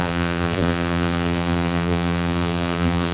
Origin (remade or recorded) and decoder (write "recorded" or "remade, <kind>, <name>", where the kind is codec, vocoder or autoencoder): remade, vocoder, BigVGAN v2